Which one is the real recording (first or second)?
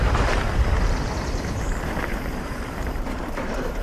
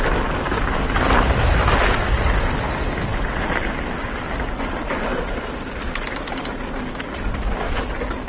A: second